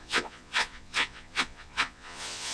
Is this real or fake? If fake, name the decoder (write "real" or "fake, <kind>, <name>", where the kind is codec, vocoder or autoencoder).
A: fake, vocoder, Vocos